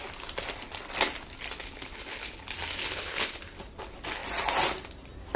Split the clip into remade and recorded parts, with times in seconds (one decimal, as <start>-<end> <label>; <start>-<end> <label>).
0.0-1.6 recorded; 1.6-2.4 remade; 2.4-2.8 recorded; 2.8-3.4 remade; 3.4-5.4 recorded